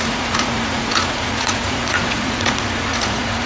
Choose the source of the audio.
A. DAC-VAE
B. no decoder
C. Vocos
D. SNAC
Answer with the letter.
C